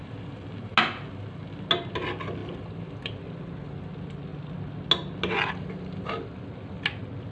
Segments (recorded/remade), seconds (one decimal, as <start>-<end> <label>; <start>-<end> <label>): 0.0-7.3 recorded